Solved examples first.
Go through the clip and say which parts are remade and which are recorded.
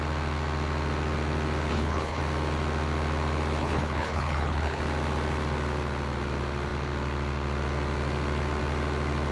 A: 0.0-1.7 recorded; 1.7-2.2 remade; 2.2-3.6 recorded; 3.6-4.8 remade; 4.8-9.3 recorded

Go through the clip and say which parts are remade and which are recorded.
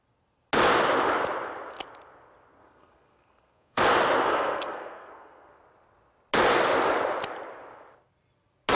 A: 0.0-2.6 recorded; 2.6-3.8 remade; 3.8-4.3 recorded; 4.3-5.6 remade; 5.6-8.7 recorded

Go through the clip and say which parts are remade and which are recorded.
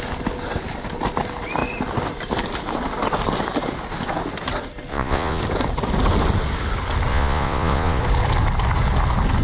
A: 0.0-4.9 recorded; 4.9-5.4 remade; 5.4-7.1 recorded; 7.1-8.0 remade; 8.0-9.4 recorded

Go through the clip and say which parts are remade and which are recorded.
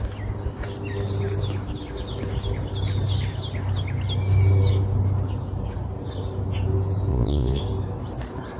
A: 0.0-7.1 recorded; 7.1-7.6 remade; 7.6-8.6 recorded